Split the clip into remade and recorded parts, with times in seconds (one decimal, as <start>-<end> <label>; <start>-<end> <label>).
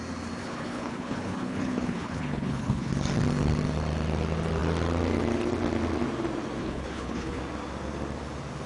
0.0-0.4 recorded; 0.4-2.9 remade; 2.9-6.6 recorded; 6.6-7.4 remade; 7.4-8.7 recorded